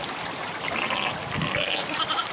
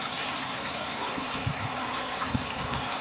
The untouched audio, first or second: first